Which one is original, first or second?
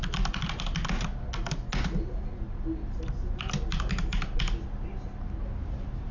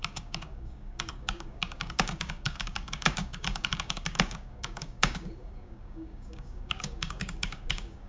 first